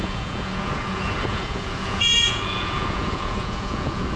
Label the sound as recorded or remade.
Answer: remade